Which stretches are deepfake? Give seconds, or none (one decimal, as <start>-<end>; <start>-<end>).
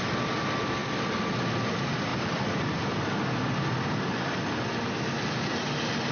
none